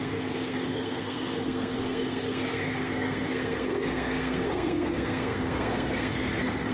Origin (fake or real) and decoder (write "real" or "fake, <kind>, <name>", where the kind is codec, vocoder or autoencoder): fake, codec, SNAC